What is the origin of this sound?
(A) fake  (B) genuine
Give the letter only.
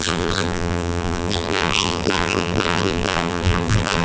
A